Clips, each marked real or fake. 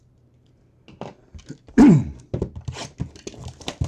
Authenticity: real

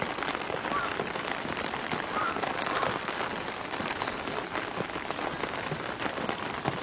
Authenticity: fake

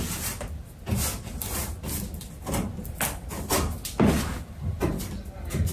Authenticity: real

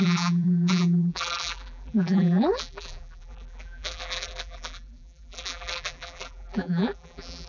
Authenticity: fake